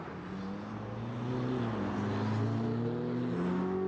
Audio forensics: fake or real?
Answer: real